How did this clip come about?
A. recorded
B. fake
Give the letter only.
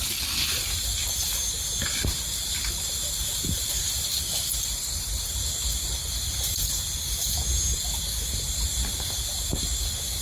A